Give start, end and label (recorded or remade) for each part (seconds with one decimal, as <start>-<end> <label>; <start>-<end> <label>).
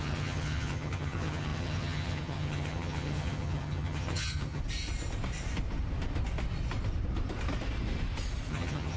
0.0-4.6 remade; 4.6-8.5 recorded; 8.5-9.0 remade